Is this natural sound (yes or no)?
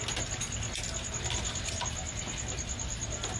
yes